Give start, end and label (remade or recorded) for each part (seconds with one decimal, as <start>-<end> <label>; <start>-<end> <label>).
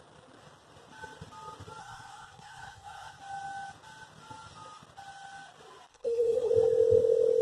0.0-1.8 recorded; 1.8-3.2 remade; 3.2-5.9 recorded; 5.9-6.5 remade; 6.5-7.4 recorded